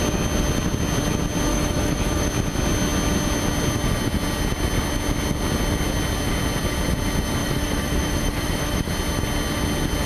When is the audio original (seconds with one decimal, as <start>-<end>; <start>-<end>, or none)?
0.0-1.5; 2.3-7.4; 8.9-10.1